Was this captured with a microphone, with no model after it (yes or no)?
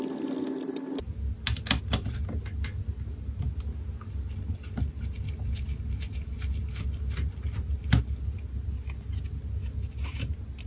yes